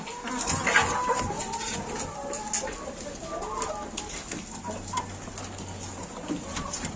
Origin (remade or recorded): recorded